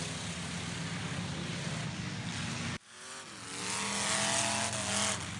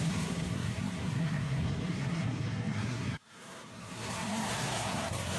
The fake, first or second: second